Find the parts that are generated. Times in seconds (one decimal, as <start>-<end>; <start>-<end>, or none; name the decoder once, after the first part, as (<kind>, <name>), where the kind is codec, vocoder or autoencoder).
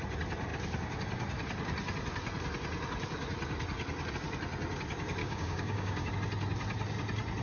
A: 5.2-6.1 (codec, DAC)